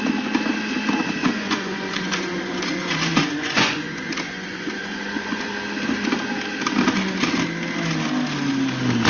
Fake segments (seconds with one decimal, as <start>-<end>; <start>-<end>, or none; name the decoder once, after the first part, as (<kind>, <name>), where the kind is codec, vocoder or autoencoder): 1.2-5.5 (vocoder, Vocos)